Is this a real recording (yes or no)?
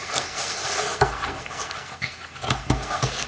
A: no